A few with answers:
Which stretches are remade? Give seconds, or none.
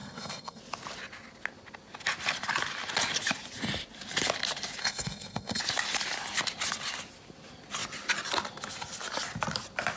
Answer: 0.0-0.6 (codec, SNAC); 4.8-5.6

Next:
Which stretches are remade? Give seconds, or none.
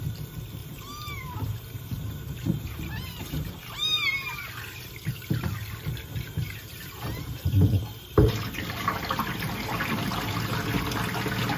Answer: 0.6-5.3 (vocoder, BigVGAN v2); 6.1-8.3